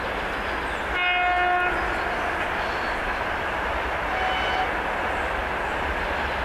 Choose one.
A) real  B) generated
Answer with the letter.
A